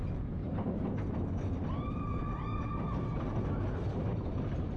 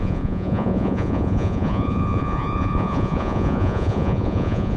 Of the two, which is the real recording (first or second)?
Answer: first